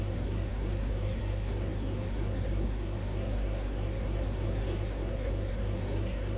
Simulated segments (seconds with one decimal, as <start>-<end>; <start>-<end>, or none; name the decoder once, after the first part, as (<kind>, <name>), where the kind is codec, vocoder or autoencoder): 0.0-6.4 (codec, SNAC)